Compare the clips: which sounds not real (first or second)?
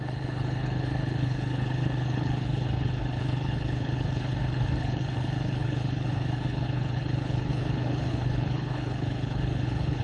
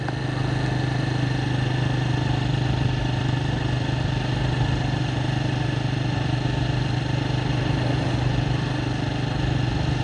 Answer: first